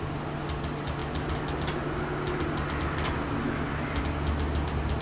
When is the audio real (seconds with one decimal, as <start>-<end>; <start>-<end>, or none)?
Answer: 0.0-5.0